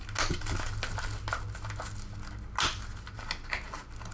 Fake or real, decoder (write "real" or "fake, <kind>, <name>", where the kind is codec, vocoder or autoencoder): real